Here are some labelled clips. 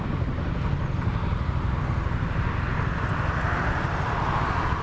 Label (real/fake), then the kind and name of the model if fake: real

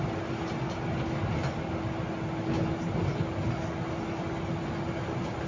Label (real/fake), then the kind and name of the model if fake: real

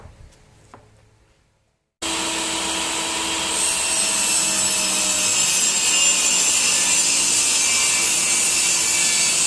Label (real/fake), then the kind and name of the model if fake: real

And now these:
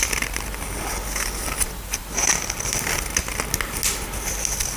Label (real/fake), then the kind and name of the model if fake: real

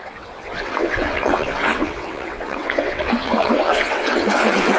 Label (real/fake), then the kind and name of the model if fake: fake, vocoder, WaveNeXt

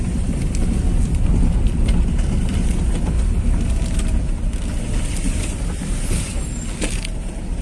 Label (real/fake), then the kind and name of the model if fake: real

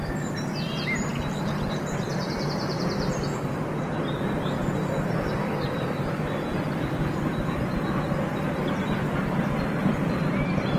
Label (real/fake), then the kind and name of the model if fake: fake, vocoder, BigVGAN v2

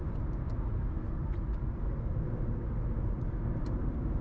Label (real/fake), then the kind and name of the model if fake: real